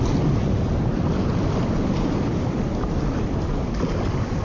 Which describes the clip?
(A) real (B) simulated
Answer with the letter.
A